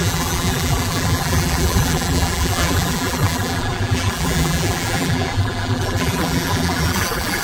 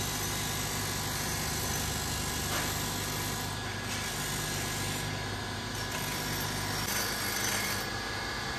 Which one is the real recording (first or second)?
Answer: second